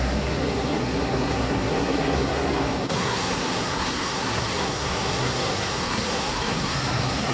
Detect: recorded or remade remade